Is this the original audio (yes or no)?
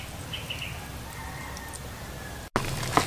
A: yes